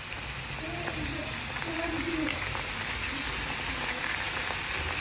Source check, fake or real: real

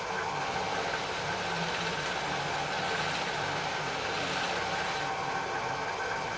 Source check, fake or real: real